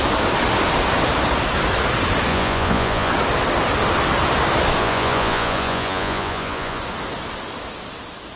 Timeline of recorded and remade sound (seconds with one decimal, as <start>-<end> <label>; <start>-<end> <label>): 0.0-2.3 recorded; 2.3-3.1 remade; 3.1-4.8 recorded; 4.8-6.8 remade; 6.8-8.4 recorded